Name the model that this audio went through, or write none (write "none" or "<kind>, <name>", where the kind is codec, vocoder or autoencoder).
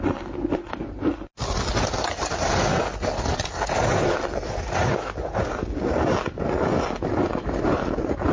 none